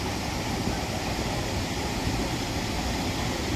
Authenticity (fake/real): real